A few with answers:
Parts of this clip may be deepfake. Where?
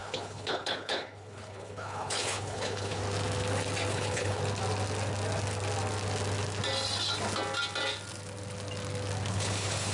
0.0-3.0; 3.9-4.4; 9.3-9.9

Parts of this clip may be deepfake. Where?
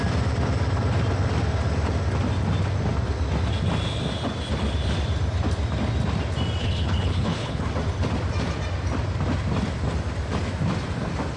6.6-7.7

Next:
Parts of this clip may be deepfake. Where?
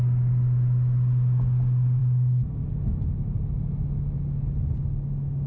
none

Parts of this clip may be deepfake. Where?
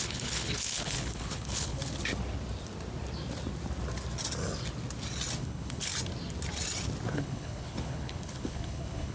0.0-1.8; 5.4-5.9; 7.1-9.1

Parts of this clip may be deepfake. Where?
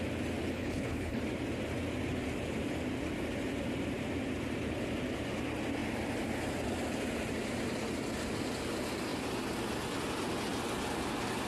0.5-1.2